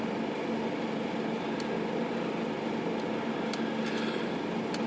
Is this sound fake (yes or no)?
no